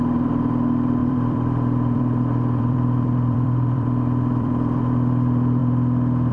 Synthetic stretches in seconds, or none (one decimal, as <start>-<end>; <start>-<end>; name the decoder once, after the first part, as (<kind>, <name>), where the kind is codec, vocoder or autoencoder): 0.0-5.6 (vocoder, BigVGAN v2)